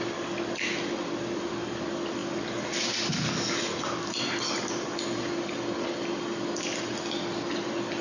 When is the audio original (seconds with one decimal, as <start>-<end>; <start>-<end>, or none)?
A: 0.0-8.0